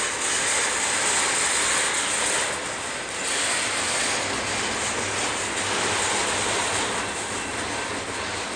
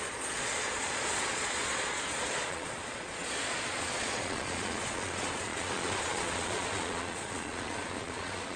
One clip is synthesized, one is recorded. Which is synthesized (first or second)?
second